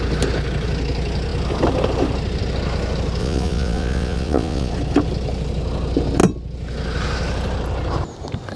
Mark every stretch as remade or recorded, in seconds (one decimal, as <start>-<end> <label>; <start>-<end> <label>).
0.0-3.2 recorded; 3.2-4.7 remade; 4.7-8.6 recorded